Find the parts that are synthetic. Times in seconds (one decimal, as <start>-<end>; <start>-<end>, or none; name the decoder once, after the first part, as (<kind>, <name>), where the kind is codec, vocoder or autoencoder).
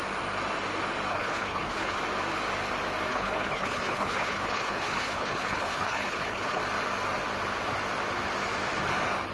1.1-2.0 (codec, HILCodec); 3.1-6.6